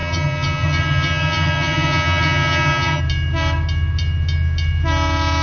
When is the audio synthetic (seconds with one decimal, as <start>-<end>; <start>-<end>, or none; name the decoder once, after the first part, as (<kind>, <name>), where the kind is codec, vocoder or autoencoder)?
0.0-3.0 (vocoder, HiFi-GAN)